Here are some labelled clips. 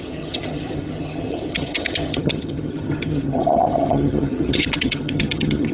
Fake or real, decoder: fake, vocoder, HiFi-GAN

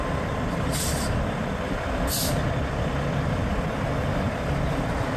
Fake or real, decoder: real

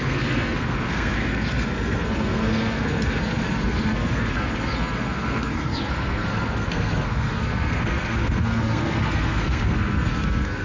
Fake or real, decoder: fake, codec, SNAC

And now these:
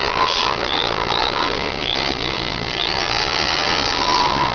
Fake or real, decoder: fake, vocoder, Vocos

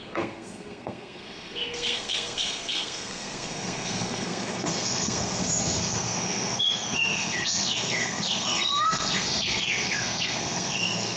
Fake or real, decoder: fake, codec, SNAC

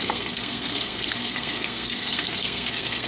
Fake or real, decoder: fake, codec, SNAC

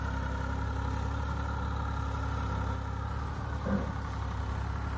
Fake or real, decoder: real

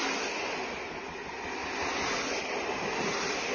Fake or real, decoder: real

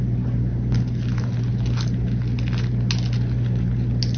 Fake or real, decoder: real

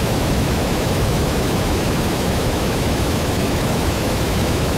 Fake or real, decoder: fake, autoencoder, DAC-VAE